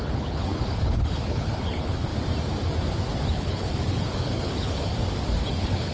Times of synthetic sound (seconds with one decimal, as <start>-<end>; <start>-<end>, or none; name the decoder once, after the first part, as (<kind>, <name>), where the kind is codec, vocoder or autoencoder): 0.0-2.1 (codec, HILCodec); 3.3-4.9; 5.5-5.9